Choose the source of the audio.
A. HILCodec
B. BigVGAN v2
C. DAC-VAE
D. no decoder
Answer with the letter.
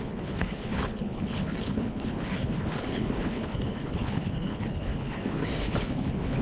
A